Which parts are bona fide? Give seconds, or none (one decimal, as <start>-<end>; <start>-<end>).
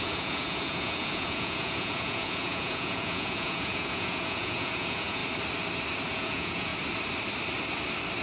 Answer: 5.2-6.1; 6.7-8.2